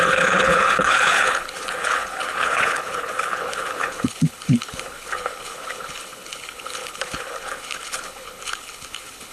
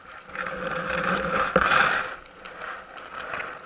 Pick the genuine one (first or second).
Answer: second